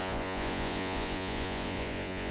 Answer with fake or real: fake